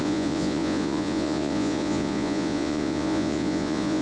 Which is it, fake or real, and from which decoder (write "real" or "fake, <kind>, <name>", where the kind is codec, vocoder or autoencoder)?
fake, vocoder, Vocos